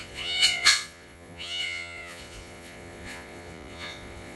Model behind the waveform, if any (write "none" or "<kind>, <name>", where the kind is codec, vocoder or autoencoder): vocoder, Vocos